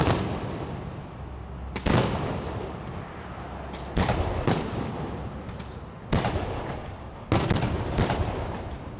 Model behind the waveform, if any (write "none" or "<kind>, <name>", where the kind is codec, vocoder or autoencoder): none